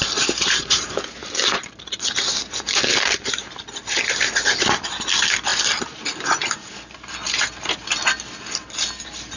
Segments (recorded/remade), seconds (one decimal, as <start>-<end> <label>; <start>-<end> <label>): 0.0-1.2 recorded; 1.2-4.1 remade; 4.1-5.5 recorded; 5.5-7.1 remade; 7.1-9.4 recorded